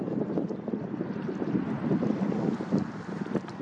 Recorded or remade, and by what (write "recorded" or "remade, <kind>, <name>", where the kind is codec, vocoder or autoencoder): recorded